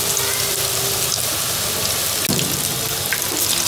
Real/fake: real